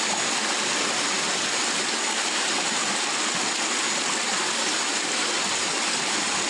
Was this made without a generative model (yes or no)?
yes